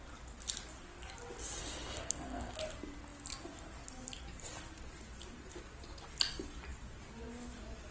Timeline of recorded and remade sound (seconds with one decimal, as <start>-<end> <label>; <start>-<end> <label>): 0.0-1.6 recorded; 1.6-2.6 remade; 2.6-7.9 recorded